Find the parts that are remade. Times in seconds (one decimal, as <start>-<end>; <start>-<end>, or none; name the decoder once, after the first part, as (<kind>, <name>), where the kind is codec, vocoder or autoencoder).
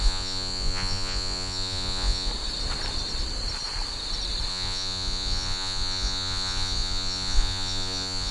0.0-2.3 (vocoder, Vocos); 4.5-8.3